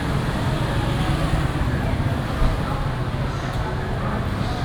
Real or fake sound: real